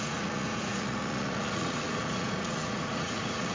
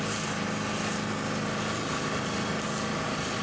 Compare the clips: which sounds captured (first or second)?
second